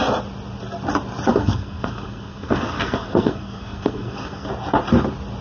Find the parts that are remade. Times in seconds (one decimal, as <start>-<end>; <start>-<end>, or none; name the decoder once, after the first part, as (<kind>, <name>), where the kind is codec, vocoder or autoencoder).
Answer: 1.3-4.5 (codec, SNAC)